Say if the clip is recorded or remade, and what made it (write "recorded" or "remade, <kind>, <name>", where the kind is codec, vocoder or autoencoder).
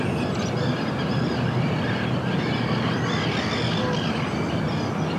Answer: recorded